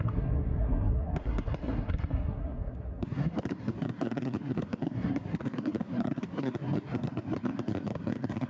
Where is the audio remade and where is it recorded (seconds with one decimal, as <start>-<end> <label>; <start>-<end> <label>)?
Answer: 0.0-8.5 remade